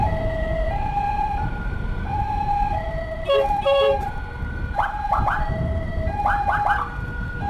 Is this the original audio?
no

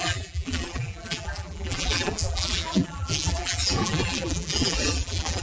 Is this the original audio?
no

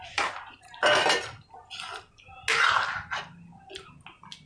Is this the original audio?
yes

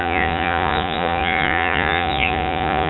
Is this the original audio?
no